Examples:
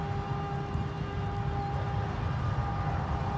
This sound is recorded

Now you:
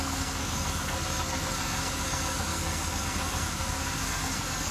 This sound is remade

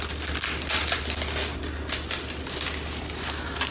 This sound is recorded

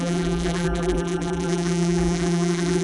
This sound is remade